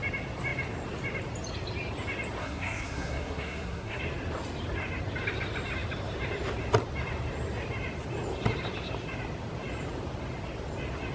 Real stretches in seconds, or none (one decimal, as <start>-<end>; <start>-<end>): 0.0-2.4; 4.0-11.1